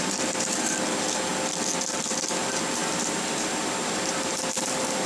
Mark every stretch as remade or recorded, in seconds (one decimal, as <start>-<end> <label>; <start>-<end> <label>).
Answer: 0.0-5.1 remade